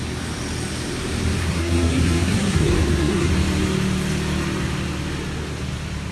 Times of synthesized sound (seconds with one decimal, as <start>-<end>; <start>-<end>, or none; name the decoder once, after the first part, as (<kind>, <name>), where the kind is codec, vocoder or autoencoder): 1.4-3.3 (codec, SNAC)